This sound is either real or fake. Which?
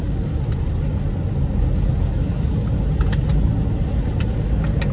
real